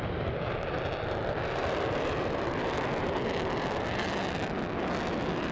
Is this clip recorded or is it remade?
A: recorded